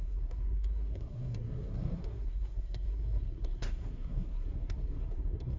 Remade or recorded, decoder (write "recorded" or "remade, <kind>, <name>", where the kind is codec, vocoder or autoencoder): remade, codec, SNAC